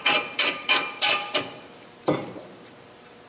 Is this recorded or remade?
remade